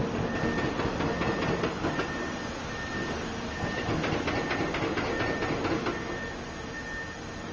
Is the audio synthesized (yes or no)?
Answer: no